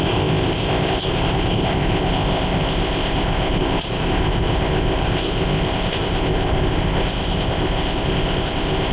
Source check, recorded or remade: remade